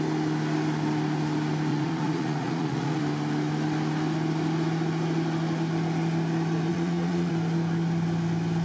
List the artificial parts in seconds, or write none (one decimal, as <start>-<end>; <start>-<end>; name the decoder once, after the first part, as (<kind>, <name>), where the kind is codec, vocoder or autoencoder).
1.7-3.0 (vocoder, Vocos); 6.7-7.3